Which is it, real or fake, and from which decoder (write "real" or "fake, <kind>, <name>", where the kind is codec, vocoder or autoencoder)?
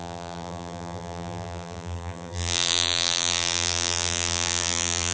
fake, vocoder, BigVGAN v2